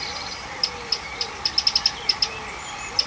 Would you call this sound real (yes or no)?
yes